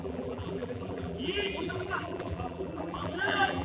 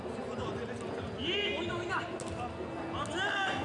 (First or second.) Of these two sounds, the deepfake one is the first